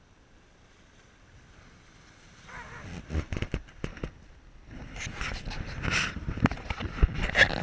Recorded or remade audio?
recorded